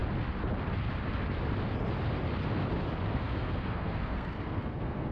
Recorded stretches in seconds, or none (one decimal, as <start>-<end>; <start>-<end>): 0.0-3.1